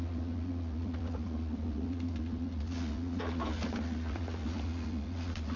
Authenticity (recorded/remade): remade